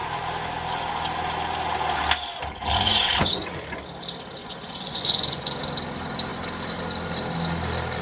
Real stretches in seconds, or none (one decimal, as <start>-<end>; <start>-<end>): 0.0-2.6; 3.6-4.4; 5.6-8.0